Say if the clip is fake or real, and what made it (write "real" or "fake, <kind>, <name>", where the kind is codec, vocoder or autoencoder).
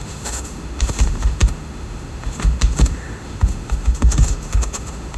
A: fake, autoencoder, DAC-VAE